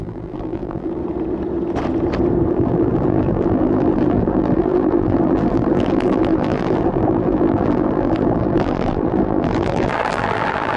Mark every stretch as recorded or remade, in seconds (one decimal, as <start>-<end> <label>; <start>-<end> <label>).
0.0-1.0 remade; 1.0-2.5 recorded; 2.5-10.8 remade